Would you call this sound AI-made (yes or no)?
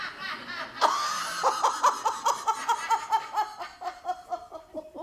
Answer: no